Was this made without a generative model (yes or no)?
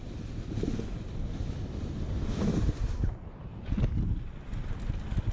yes